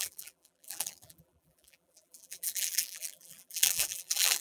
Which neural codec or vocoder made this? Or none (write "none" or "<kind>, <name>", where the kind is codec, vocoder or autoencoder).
vocoder, BigVGAN v2